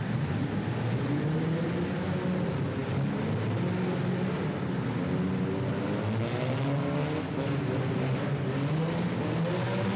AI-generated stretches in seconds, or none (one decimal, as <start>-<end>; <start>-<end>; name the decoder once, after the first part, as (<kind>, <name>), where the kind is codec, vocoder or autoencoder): none